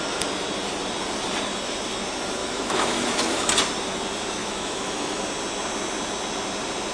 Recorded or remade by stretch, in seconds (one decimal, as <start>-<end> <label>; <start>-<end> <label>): 0.0-2.4 recorded; 2.4-3.5 remade; 3.5-4.4 recorded; 4.4-5.2 remade; 5.2-6.9 recorded